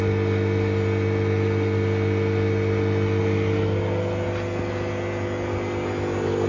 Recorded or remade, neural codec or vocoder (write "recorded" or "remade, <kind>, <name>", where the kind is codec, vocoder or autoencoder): recorded